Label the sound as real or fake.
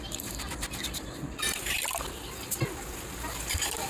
fake